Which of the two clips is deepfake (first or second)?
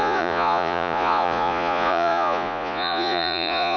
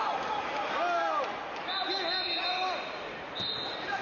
first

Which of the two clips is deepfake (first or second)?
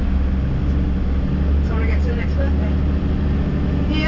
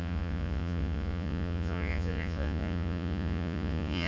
second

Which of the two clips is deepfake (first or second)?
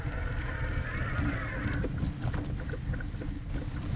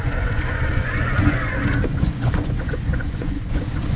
second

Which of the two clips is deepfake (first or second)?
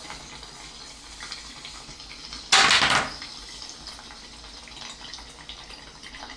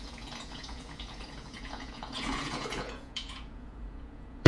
second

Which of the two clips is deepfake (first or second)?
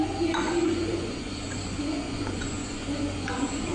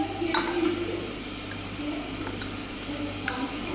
first